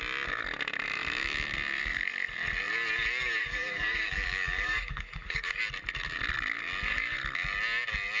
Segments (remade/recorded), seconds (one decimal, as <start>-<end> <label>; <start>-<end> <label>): 0.0-3.4 recorded; 3.4-5.6 remade; 5.6-8.2 recorded